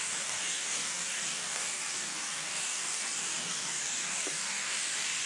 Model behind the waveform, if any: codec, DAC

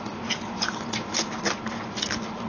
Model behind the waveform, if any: none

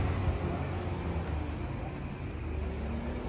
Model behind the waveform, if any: none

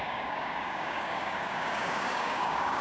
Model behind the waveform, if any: codec, DAC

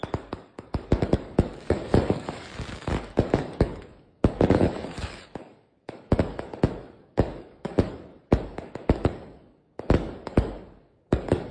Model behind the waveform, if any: codec, DAC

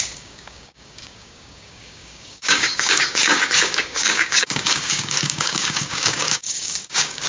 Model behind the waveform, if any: codec, DAC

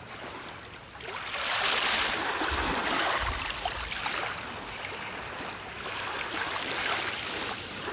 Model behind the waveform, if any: none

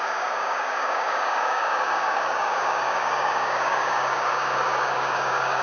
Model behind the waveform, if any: codec, DAC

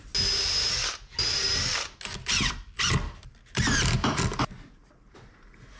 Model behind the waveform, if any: none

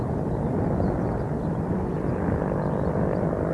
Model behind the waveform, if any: none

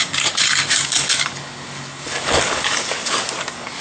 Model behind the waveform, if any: codec, DAC